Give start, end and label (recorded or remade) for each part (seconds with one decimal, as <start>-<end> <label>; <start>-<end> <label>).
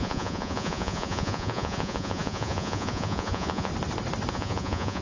0.0-3.7 remade; 3.7-4.3 recorded; 4.3-5.0 remade